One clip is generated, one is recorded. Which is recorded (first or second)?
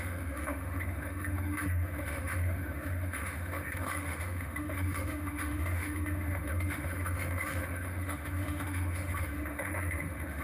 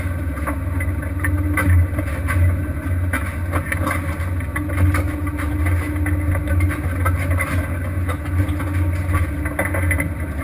second